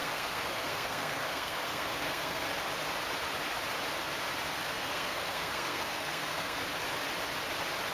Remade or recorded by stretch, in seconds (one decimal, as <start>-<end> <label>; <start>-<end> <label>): 0.0-2.4 remade; 2.4-4.6 recorded; 4.6-6.6 remade; 6.6-7.9 recorded